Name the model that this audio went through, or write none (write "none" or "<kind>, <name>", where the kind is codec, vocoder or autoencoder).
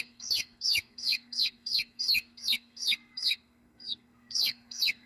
codec, SNAC